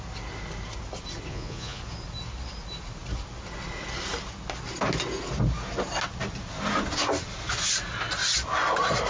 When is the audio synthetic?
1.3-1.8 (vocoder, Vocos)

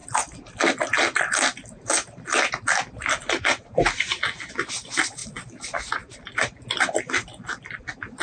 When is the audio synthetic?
none